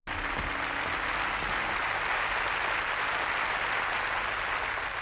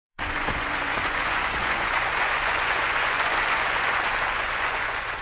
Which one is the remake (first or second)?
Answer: second